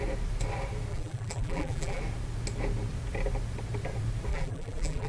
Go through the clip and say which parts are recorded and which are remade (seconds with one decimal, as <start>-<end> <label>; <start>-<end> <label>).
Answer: 0.0-0.9 recorded; 0.9-2.0 remade; 2.0-4.3 recorded; 4.3-5.1 remade